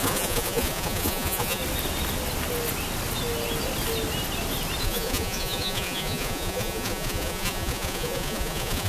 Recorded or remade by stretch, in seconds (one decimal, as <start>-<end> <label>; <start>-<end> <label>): 0.0-1.6 remade; 1.6-4.8 recorded; 4.8-8.9 remade